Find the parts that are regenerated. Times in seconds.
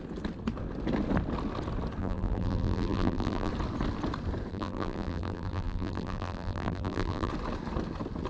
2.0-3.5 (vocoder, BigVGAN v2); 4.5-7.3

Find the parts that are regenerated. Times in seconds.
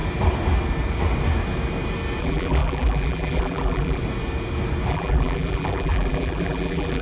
2.2-4.0 (vocoder, BigVGAN v2); 4.9-7.0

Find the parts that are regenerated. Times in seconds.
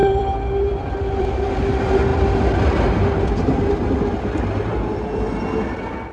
0.0-1.5 (vocoder, BigVGAN v2)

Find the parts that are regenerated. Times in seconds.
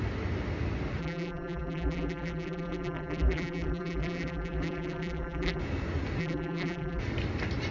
1.0-5.6 (vocoder, BigVGAN v2); 6.2-7.0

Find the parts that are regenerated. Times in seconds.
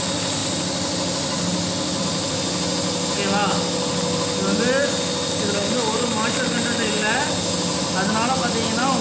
0.4-2.0 (vocoder, BigVGAN v2)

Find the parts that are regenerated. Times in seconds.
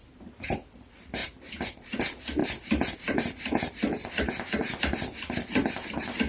0.0-6.3 (vocoder, BigVGAN v2)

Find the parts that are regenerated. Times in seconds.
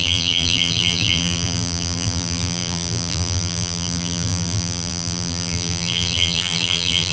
0.0-7.1 (vocoder, BigVGAN v2)